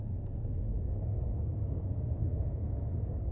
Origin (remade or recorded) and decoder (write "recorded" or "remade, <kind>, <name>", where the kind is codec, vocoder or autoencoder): remade, codec, SNAC